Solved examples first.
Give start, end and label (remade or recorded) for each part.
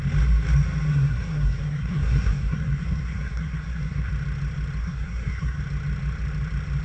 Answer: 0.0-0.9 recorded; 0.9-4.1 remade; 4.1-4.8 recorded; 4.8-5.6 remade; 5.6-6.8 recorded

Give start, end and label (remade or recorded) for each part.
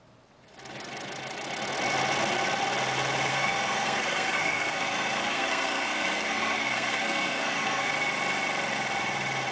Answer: 0.0-3.3 recorded; 3.3-7.9 remade; 7.9-9.5 recorded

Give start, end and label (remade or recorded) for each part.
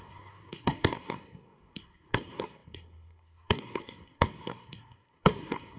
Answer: 0.0-5.8 remade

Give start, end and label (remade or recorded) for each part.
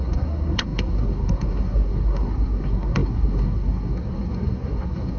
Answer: 0.0-5.2 remade